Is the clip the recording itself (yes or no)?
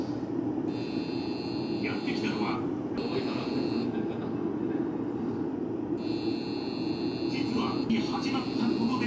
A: yes